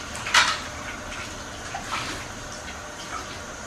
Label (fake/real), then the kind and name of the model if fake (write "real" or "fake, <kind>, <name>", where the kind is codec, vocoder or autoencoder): real